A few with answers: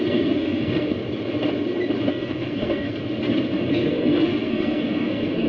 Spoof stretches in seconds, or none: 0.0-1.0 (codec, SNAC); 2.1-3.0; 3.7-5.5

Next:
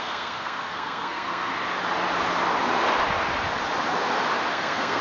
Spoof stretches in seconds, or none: 0.0-1.5 (codec, SNAC); 4.5-5.0

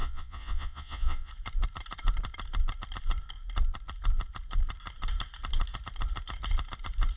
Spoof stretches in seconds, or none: 0.0-1.3 (vocoder, Vocos)

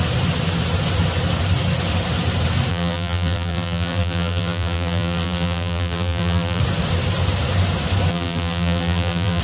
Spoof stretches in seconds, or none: 2.7-6.6 (vocoder, BigVGAN v2); 8.1-9.4